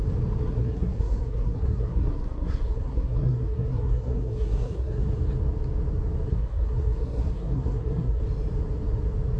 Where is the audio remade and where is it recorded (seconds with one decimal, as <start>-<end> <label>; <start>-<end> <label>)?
0.0-0.4 recorded; 0.4-5.0 remade; 5.0-6.3 recorded; 6.3-8.2 remade; 8.2-9.4 recorded